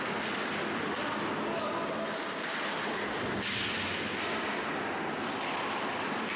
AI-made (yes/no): no